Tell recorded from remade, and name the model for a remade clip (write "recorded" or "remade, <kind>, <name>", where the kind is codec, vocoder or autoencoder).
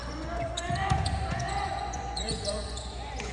remade, vocoder, Vocos